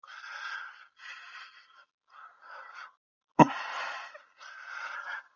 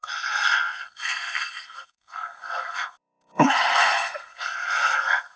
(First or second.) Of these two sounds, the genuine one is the first